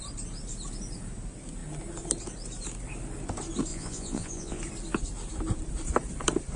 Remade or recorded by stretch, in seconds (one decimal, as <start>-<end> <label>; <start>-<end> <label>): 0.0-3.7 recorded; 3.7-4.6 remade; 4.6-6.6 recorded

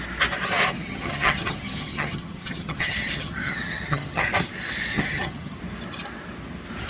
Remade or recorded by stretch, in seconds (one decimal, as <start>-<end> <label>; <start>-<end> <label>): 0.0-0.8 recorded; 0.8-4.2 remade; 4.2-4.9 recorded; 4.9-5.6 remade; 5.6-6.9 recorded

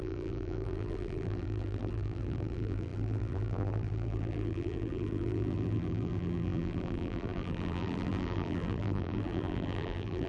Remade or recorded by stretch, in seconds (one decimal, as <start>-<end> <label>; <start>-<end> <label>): 0.0-10.3 remade

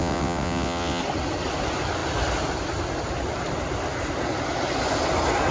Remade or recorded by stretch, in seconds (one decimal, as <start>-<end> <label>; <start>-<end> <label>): 0.0-1.0 remade; 1.0-5.5 recorded

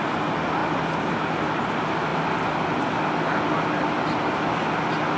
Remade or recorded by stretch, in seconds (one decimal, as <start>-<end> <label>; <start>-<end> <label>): 0.0-5.2 recorded

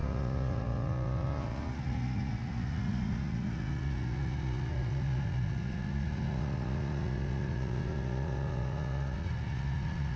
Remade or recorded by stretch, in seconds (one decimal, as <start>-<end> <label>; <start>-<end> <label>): 0.0-10.2 remade

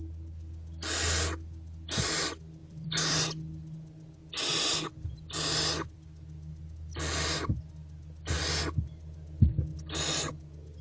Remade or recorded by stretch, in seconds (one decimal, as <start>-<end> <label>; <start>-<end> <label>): 0.0-2.6 recorded; 2.6-3.2 remade; 3.2-10.8 recorded